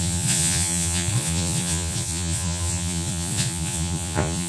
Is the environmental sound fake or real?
fake